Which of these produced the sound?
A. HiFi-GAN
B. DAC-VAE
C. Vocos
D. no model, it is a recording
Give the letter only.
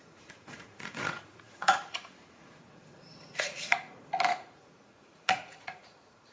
C